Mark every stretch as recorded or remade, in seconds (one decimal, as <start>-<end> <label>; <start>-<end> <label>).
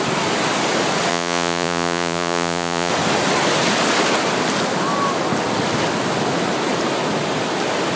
0.0-1.1 recorded; 1.1-2.9 remade; 2.9-8.0 recorded